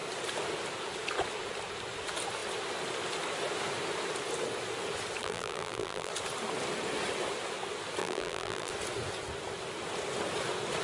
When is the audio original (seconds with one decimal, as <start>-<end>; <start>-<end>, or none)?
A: 0.0-5.2; 6.1-8.0; 8.7-10.8